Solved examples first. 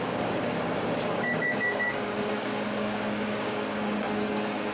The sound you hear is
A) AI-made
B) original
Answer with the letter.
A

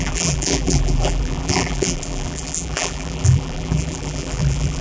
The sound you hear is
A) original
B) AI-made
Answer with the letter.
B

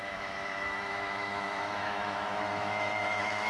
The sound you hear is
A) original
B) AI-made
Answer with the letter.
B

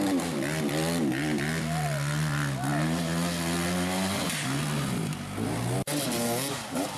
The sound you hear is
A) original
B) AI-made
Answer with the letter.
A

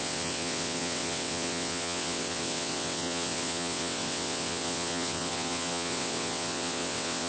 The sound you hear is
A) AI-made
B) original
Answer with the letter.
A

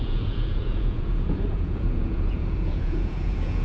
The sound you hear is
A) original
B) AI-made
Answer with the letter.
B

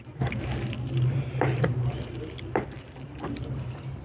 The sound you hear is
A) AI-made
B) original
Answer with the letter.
A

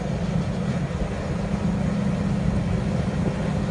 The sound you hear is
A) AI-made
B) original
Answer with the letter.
B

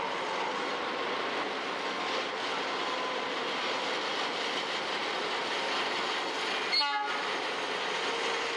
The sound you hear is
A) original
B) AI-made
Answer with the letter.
A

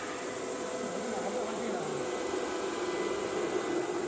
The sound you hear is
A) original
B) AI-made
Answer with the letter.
A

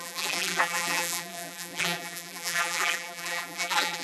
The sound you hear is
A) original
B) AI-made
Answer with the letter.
B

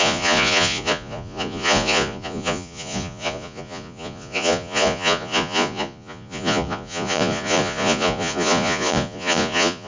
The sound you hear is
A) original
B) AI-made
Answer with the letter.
B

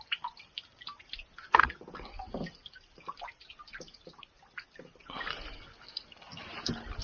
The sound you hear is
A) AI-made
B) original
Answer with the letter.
B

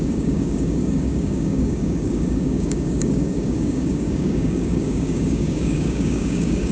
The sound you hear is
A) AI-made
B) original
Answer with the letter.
A